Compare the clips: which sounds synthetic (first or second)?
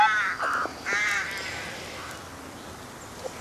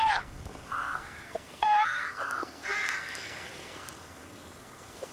second